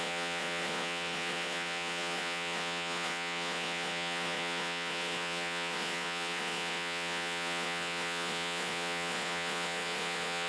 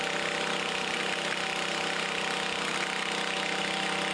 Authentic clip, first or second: second